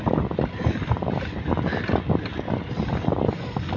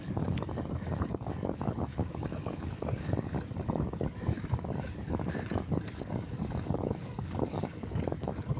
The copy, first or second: second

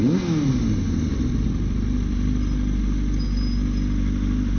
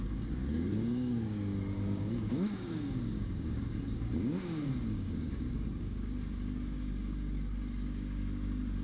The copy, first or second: second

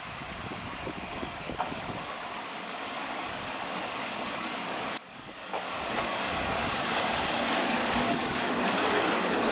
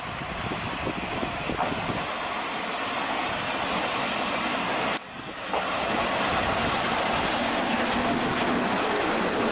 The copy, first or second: first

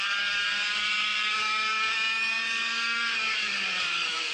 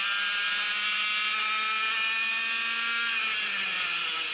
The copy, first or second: first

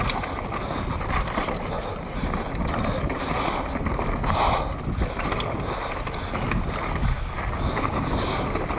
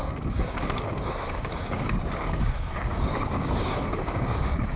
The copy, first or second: second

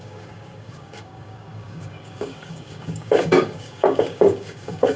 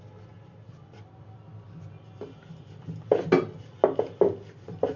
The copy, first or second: first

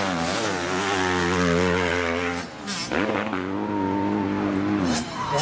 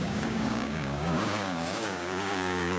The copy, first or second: second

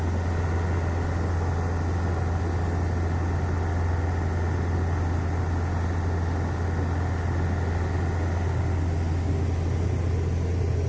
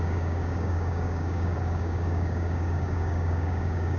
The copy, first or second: second